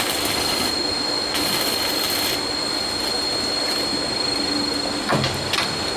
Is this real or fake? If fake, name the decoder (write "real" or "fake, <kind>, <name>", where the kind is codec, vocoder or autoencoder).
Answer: real